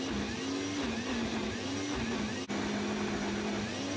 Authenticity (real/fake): real